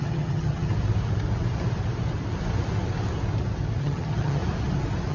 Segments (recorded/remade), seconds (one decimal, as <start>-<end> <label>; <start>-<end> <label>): 0.0-0.7 remade; 0.7-3.8 recorded; 3.8-4.4 remade; 4.4-5.1 recorded